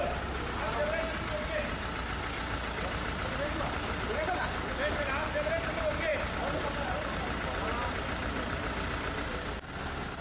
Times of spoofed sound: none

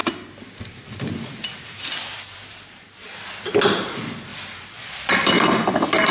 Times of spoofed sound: 0.0-2.6 (vocoder, BigVGAN v2); 4.3-5.6

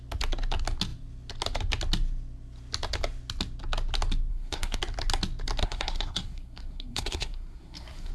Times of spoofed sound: 4.3-4.8 (codec, SNAC); 5.6-8.1

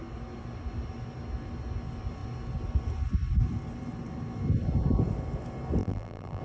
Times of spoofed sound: 5.8-6.4 (vocoder, BigVGAN v2)

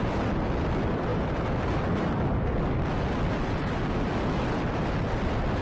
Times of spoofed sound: none